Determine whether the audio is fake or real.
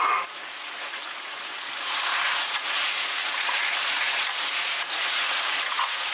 fake